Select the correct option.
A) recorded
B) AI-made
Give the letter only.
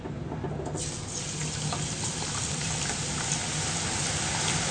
A